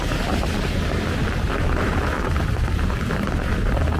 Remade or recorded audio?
remade